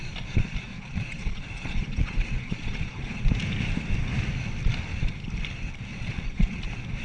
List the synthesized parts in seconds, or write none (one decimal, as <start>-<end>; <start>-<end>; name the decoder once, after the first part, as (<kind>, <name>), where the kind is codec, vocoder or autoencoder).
0.7-3.2 (vocoder, Vocos); 5.9-6.6